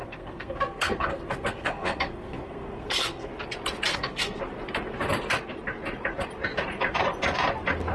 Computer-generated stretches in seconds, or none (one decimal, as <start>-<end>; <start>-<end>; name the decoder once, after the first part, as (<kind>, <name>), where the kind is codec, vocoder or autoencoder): 0.0-3.3 (codec, SNAC); 3.9-4.4